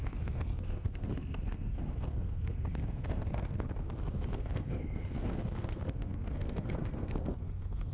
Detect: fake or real fake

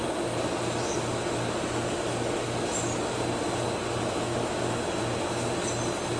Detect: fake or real real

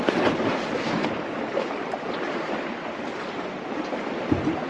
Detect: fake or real real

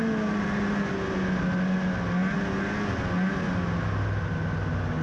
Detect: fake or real real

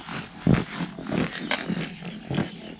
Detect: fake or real real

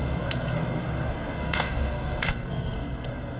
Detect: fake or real fake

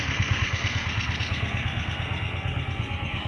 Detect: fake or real fake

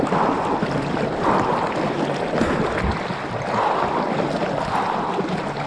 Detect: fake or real real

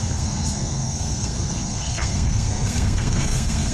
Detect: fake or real fake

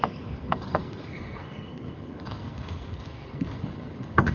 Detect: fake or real fake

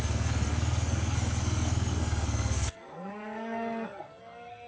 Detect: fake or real fake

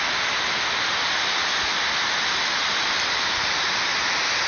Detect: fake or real real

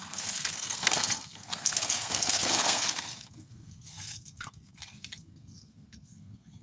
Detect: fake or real fake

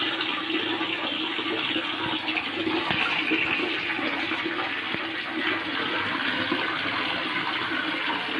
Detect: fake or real real